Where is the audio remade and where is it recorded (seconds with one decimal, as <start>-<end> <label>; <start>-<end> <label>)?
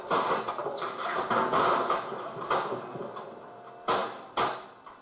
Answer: 0.0-0.6 recorded; 0.6-3.6 remade; 3.6-5.0 recorded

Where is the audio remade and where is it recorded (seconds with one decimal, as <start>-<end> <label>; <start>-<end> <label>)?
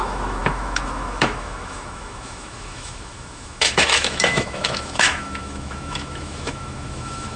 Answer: 0.0-7.4 remade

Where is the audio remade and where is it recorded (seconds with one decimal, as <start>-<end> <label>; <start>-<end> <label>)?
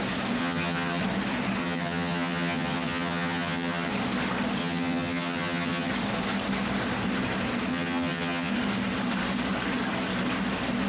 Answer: 0.0-0.4 recorded; 0.4-1.0 remade; 1.0-1.6 recorded; 1.6-3.9 remade; 3.9-4.6 recorded; 4.6-5.9 remade; 5.9-7.7 recorded; 7.7-8.5 remade; 8.5-10.9 recorded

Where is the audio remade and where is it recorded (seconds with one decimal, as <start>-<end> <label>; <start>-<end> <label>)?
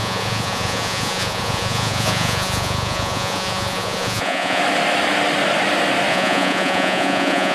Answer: 0.0-4.6 remade; 4.6-6.1 recorded; 6.1-7.5 remade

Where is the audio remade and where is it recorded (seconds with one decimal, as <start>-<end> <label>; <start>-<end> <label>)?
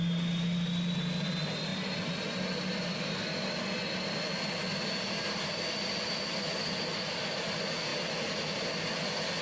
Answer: 0.0-9.4 recorded